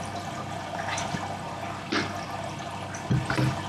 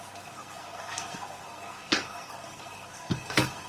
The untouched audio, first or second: first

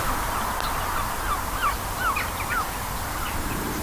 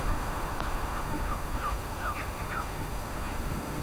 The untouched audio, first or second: first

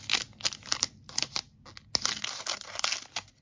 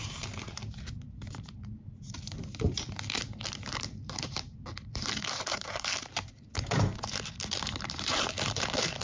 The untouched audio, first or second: first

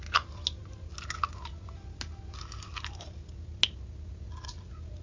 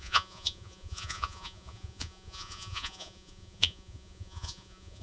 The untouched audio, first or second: first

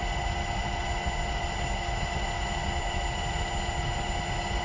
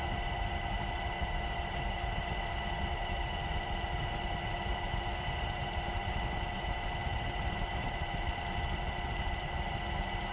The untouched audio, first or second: first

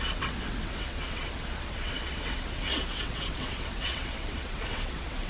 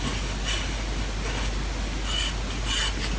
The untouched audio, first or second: second